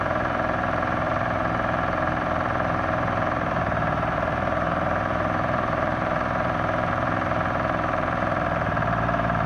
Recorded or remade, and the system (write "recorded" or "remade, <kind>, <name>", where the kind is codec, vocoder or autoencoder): remade, vocoder, BigVGAN v2